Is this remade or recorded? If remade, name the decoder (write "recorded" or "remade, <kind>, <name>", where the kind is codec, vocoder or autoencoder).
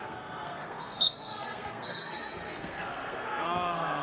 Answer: remade, codec, SNAC